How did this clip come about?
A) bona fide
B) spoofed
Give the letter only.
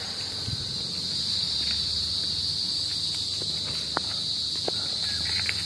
A